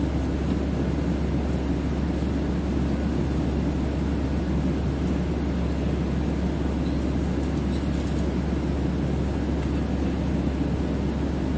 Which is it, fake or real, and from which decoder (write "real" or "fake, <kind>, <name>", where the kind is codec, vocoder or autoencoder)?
real